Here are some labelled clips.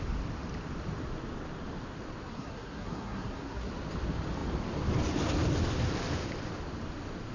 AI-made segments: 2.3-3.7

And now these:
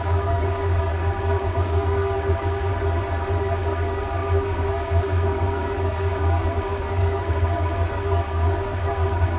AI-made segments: 0.0-2.7; 3.4-9.4

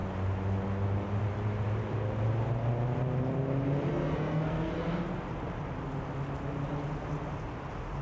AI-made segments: 3.9-4.7